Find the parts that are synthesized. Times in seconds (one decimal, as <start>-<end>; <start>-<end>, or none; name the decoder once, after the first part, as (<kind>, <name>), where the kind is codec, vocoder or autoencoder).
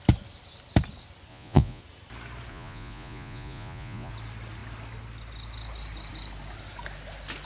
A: 1.3-1.8 (vocoder, Vocos); 2.5-4.1